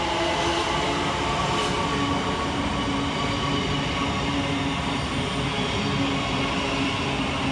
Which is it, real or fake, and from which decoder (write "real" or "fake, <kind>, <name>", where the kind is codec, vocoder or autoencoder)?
real